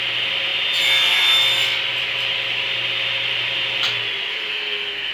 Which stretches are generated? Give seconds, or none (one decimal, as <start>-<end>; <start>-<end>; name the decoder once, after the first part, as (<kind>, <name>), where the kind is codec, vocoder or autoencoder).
4.3-5.1 (codec, SNAC)

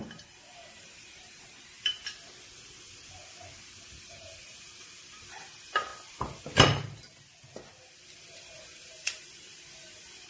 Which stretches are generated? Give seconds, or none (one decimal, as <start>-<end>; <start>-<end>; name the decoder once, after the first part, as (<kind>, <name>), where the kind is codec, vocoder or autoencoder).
0.0-1.9 (vocoder, BigVGAN v2); 4.0-5.9; 8.2-10.3

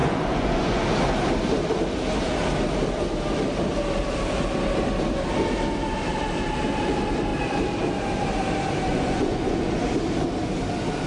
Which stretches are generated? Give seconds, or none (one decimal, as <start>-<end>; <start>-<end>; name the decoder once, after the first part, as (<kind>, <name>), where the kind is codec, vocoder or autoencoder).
0.0-0.8 (vocoder, Vocos); 8.9-9.8

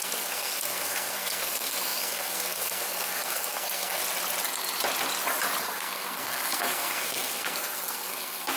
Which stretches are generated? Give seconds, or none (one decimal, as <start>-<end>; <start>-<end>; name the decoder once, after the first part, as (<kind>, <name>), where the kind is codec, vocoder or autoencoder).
0.0-4.0 (codec, SNAC); 5.6-8.6

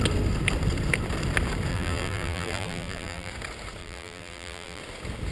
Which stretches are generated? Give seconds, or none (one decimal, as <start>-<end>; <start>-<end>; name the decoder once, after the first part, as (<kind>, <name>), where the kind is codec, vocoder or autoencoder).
1.7-3.3 (vocoder, BigVGAN v2); 3.8-4.8

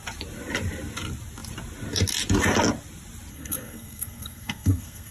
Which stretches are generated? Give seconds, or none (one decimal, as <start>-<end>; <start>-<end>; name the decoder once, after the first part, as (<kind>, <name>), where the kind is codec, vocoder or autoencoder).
3.3-5.1 (codec, SNAC)